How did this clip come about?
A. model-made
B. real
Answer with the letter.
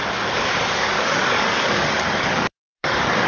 A